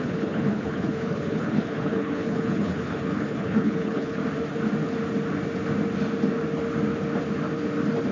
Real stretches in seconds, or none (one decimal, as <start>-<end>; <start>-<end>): 4.2-8.1